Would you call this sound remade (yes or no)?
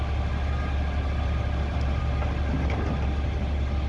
no